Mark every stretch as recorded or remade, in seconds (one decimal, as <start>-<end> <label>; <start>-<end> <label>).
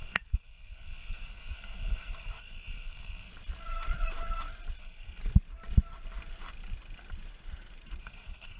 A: 0.0-3.3 remade; 3.3-4.8 recorded; 4.8-5.2 remade; 5.2-8.0 recorded; 8.0-8.6 remade